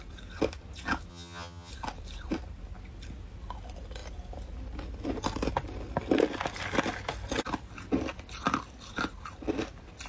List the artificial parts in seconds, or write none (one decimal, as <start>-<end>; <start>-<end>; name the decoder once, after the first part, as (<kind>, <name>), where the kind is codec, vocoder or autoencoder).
1.1-1.7 (vocoder, HiFi-GAN)